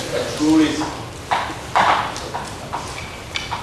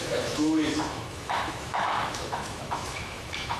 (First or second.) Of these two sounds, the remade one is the second